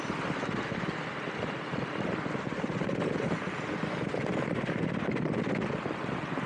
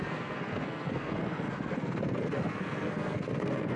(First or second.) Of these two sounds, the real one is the first